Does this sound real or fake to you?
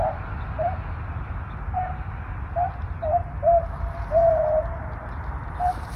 real